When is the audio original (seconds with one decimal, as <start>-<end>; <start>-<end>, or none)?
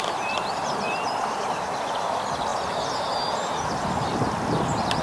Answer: 0.0-5.0